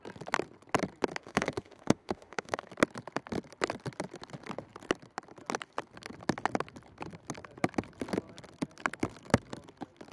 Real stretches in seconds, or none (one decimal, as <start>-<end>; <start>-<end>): 0.0-1.2; 2.7-10.1